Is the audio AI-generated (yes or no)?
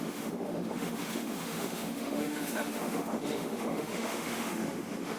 yes